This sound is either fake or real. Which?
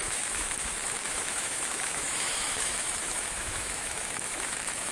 fake